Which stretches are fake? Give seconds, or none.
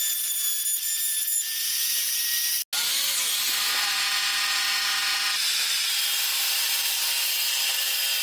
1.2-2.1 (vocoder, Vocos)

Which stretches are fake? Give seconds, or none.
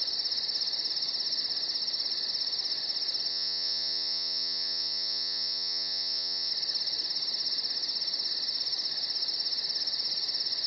3.3-6.5 (vocoder, Vocos)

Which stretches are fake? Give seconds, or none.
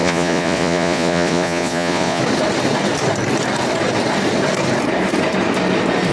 0.0-2.2 (vocoder, Vocos)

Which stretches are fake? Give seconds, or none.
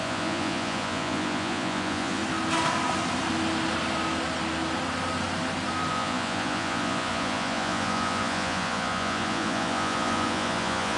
0.0-2.2 (vocoder, Vocos); 5.9-11.0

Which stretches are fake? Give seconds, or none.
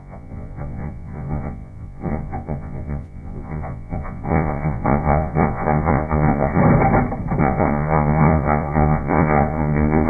0.0-6.6 (vocoder, Vocos); 7.4-10.1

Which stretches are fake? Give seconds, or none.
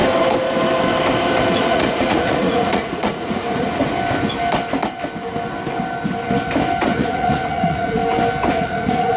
1.5-3.8 (vocoder, Vocos); 6.8-8.0; 8.5-9.2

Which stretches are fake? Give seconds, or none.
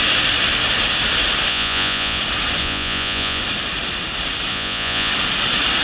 1.5-2.2 (vocoder, Vocos); 2.6-3.4; 4.5-5.1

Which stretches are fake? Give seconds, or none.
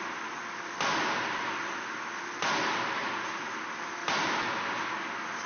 3.0-3.5 (vocoder, Vocos)